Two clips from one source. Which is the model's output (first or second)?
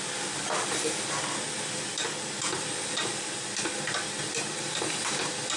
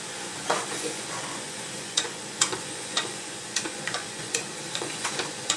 second